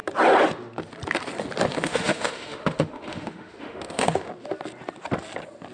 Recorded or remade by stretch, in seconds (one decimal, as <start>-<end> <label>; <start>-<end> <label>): 0.0-1.7 recorded; 1.7-4.3 remade; 4.3-5.7 recorded